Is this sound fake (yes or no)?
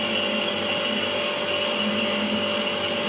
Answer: no